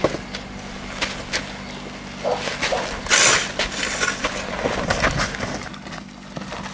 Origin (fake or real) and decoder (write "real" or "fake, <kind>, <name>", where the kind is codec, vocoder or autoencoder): real